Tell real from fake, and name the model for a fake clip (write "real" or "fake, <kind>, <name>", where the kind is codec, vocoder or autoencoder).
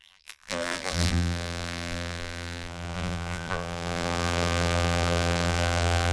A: fake, vocoder, BigVGAN v2